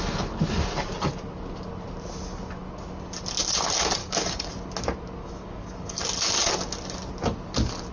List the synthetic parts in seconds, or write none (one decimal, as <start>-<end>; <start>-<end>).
4.0-4.5; 5.2-6.0